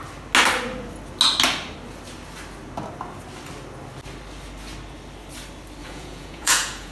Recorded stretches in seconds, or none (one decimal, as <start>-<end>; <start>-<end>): 0.0-5.8